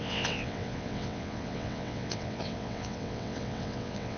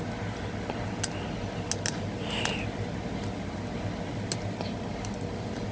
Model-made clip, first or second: first